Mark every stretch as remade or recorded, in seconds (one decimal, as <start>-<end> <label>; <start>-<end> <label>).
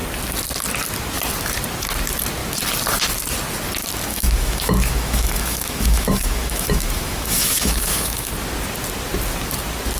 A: 0.0-4.1 recorded; 4.1-8.3 remade; 8.3-10.0 recorded